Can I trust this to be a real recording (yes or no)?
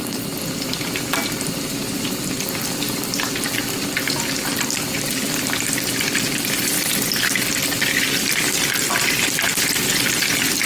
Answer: yes